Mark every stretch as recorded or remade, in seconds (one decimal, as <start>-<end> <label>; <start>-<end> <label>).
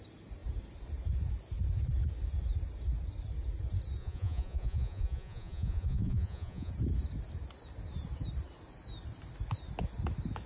0.0-4.0 recorded; 4.0-6.7 remade; 6.7-10.5 recorded